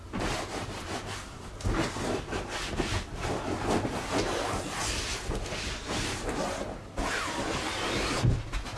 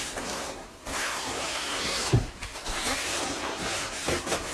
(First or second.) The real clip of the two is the first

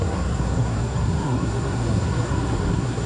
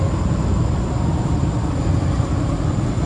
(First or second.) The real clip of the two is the second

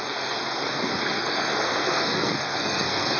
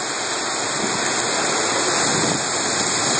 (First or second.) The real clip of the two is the second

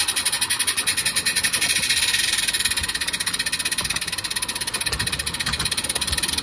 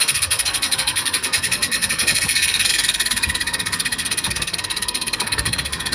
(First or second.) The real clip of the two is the first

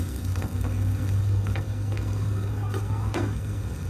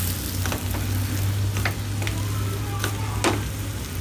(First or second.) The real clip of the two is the second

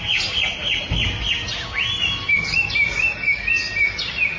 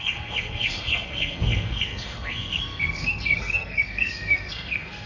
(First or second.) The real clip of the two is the first